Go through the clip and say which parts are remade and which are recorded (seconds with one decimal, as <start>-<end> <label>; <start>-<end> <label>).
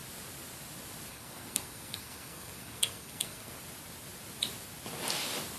0.0-1.1 recorded; 1.1-3.6 remade; 3.6-5.6 recorded